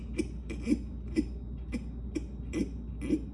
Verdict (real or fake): real